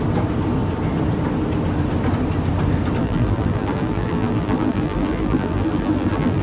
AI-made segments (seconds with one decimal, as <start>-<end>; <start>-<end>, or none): 3.0-6.4